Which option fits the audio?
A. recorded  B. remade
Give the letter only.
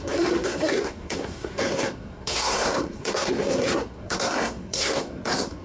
B